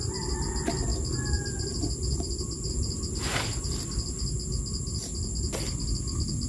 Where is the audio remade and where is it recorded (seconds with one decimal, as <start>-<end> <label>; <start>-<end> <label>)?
0.0-6.5 recorded